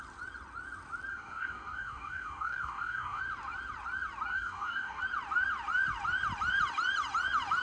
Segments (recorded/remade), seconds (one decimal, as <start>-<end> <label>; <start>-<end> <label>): 0.0-1.1 recorded; 1.1-3.2 remade; 3.2-4.3 recorded; 4.3-5.0 remade; 5.0-7.6 recorded